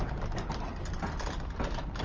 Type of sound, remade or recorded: recorded